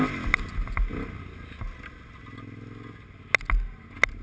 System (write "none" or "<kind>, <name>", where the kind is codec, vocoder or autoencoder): none